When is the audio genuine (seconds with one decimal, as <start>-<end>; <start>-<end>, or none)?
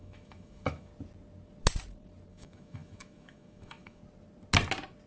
0.9-2.3; 4.0-5.1